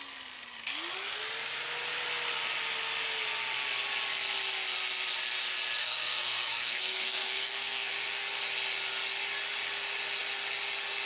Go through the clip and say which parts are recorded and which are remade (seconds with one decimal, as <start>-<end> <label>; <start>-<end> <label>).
0.0-5.8 recorded; 5.8-7.9 remade; 7.9-11.1 recorded